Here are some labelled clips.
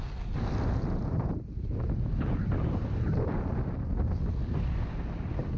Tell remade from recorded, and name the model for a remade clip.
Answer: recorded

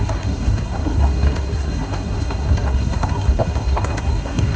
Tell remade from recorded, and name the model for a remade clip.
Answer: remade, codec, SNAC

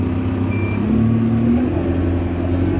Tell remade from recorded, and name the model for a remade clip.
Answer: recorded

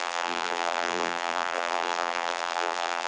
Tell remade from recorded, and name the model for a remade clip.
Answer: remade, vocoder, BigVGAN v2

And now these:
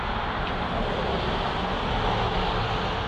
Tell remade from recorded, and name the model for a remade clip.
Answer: recorded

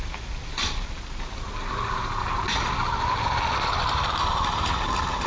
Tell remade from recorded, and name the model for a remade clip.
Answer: recorded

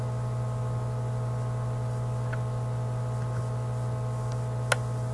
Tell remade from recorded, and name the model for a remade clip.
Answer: recorded